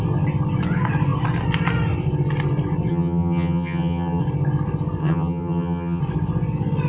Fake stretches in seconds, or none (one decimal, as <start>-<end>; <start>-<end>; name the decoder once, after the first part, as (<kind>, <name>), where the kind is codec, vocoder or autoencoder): 2.9-4.2 (vocoder, HiFi-GAN); 5.0-6.0